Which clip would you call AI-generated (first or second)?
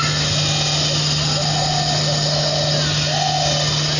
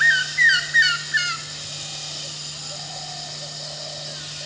second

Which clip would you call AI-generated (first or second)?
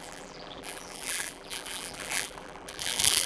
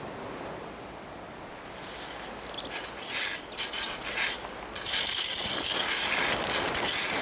first